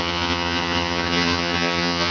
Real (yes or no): no